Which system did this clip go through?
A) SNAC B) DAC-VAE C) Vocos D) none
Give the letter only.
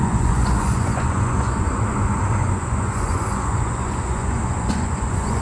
C